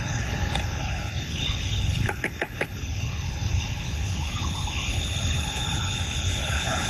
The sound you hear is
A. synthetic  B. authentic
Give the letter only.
A